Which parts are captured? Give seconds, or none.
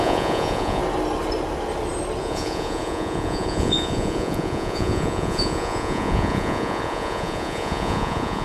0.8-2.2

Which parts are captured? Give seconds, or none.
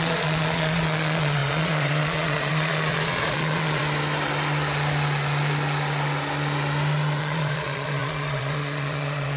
3.8-7.2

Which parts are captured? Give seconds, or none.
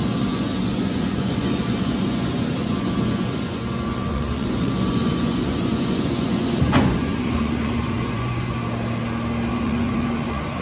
8.6-9.5